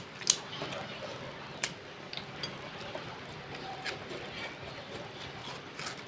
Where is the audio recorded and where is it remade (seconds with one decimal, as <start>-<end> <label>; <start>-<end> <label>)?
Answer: 0.0-6.1 recorded